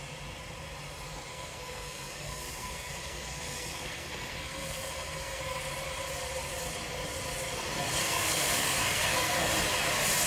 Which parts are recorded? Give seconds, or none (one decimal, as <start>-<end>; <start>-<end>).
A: 0.0-1.3; 5.4-8.0; 9.5-10.3